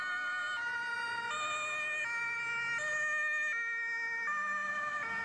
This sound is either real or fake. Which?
real